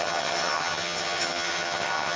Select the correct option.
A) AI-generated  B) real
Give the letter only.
A